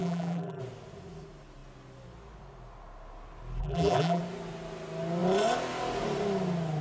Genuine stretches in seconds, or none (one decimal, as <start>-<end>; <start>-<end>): 0.6-3.6; 4.2-6.8